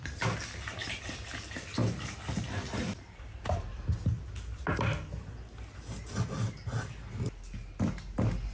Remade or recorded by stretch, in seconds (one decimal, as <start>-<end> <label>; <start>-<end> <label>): 0.0-8.5 recorded